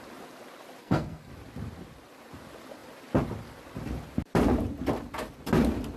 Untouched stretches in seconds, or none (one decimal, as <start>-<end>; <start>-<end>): 0.0-0.8; 1.3-6.0